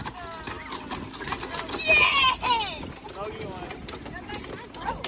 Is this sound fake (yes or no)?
no